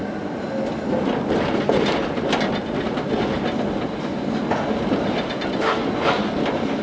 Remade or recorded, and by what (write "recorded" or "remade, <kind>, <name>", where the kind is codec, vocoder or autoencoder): recorded